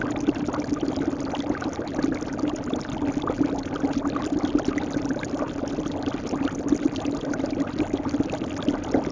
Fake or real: real